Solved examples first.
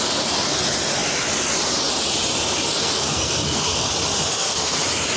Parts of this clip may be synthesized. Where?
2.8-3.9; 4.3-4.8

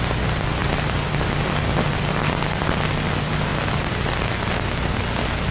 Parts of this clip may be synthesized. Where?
none

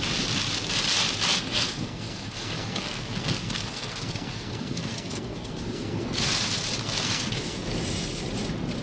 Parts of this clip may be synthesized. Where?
1.3-6.3; 6.8-7.8

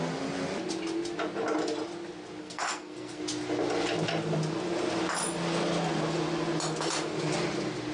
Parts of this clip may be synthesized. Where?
2.4-3.2

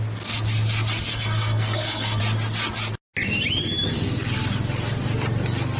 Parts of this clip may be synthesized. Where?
1.1-2.2

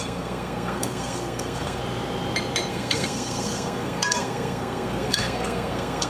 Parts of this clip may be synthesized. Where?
0.0-1.8; 2.7-6.1